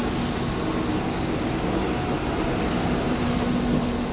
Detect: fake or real real